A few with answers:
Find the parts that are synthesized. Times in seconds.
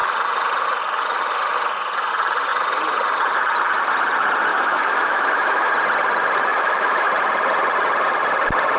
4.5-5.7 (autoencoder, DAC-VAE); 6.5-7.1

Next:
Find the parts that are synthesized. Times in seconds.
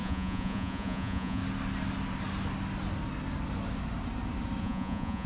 0.0-1.4 (vocoder, Vocos); 4.6-5.3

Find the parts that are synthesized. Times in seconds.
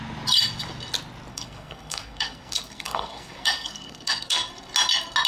1.3-4.5 (codec, SNAC)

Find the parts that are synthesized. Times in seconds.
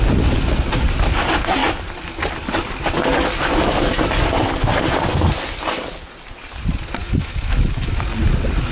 7.0-8.0 (autoencoder, DAC-VAE)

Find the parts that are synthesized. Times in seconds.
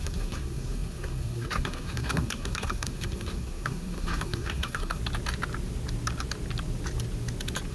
0.0-5.0 (codec, SNAC)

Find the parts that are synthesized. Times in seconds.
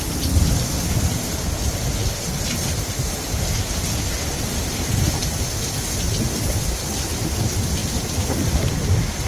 none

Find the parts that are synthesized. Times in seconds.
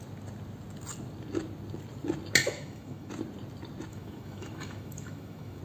2.4-3.1 (autoencoder, DAC-VAE); 3.9-5.6